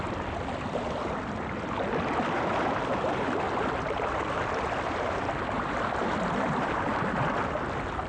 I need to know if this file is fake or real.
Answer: real